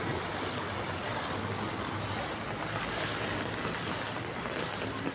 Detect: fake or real real